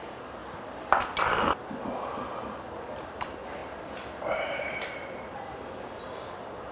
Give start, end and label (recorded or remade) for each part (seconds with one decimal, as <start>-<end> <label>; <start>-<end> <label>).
0.0-0.4 recorded; 0.4-0.9 remade; 0.9-3.6 recorded; 3.6-6.0 remade; 6.0-6.7 recorded

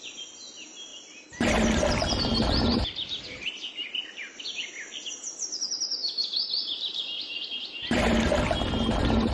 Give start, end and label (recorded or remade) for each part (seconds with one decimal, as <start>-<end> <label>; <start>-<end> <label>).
0.0-0.9 recorded; 0.9-5.1 remade; 5.1-6.0 recorded; 6.0-8.0 remade; 8.0-9.3 recorded

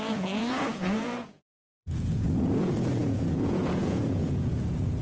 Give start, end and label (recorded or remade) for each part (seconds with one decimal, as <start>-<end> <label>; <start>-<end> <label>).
0.0-5.0 remade

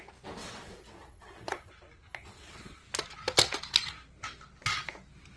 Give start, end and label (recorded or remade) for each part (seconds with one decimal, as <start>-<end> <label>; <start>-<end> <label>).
0.0-0.4 recorded; 0.4-1.7 remade; 1.7-2.1 recorded; 2.1-2.8 remade; 2.8-5.4 recorded

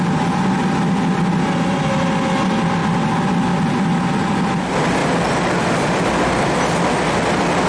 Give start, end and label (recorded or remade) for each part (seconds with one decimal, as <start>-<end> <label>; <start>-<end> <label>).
0.0-7.7 recorded

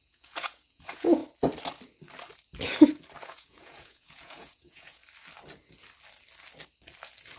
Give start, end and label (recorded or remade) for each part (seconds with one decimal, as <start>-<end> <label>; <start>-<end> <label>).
0.0-1.2 remade; 1.2-3.2 recorded; 3.2-5.0 remade; 5.0-7.4 recorded

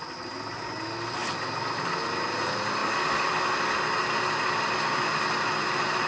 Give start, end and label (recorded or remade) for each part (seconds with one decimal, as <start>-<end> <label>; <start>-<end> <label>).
0.0-6.1 recorded